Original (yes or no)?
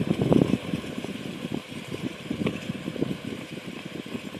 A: no